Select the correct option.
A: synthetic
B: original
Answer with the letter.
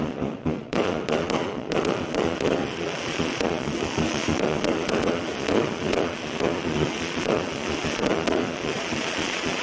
A